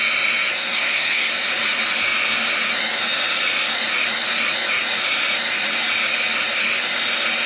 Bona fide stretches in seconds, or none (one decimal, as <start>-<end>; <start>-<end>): 0.0-0.6; 1.3-7.5